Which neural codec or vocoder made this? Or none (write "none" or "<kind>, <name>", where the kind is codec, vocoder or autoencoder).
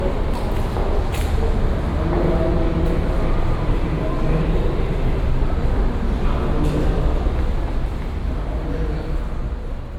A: none